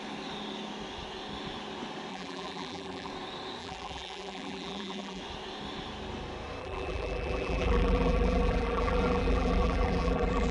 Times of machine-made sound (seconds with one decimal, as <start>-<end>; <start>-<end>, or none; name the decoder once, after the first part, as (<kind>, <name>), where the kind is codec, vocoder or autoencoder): 2.1-3.1 (vocoder, BigVGAN v2); 3.6-5.2; 6.6-10.5

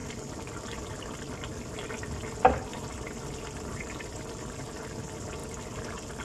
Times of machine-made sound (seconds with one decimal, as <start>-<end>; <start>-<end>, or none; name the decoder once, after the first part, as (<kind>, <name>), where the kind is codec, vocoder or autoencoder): none

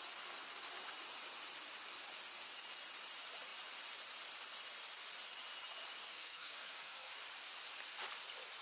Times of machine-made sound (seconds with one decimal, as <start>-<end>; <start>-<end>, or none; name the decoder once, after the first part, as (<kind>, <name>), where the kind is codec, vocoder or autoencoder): 6.0-7.1 (codec, SNAC)

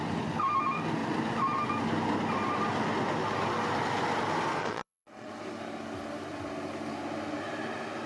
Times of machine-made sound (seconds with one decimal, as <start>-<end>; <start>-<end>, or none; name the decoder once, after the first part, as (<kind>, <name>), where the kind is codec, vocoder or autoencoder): 4.6-5.3 (vocoder, Vocos)

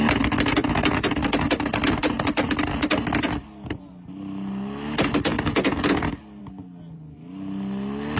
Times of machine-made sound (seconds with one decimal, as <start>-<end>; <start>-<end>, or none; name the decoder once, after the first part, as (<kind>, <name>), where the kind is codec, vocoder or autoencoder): none

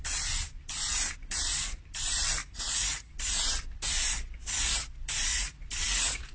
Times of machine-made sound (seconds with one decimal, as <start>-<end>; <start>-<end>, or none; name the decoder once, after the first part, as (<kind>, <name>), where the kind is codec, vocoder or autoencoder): 2.4-3.1 (vocoder, Vocos); 5.3-6.3

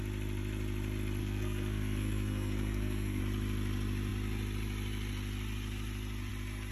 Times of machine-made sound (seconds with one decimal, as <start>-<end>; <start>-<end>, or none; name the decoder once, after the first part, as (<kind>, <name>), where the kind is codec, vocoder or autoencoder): 1.2-3.2 (codec, SNAC)

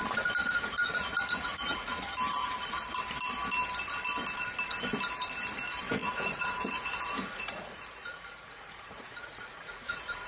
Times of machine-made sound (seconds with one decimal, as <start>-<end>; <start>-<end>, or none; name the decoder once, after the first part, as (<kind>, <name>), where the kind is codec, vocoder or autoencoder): 0.4-2.0 (vocoder, Vocos); 2.4-2.9; 6.0-10.3